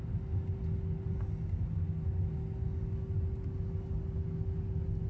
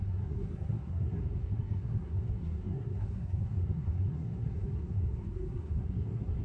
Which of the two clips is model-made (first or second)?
second